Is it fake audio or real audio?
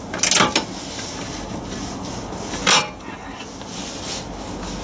real